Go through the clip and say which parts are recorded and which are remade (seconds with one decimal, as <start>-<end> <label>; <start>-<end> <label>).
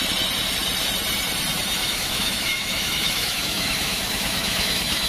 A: 0.0-1.8 recorded; 1.8-5.1 remade